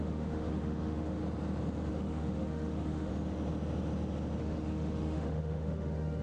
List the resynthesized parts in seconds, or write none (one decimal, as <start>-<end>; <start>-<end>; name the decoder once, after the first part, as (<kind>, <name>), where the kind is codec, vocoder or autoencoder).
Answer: 0.0-1.2 (autoencoder, DAC-VAE); 1.9-3.1; 4.4-6.2